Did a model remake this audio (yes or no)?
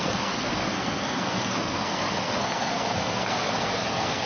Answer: yes